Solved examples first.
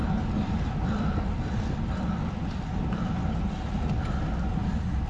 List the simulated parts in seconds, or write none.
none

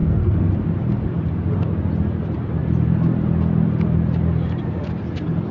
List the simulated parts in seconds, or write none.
0.0-0.5 (codec, SNAC)

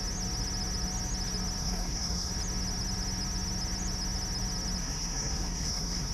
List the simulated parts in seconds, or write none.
1.6-2.3 (codec, SNAC); 4.8-6.1

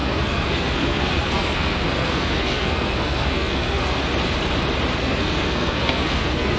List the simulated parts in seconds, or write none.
0.0-4.0 (codec, SNAC); 5.0-6.6